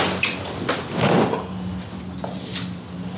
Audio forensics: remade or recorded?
recorded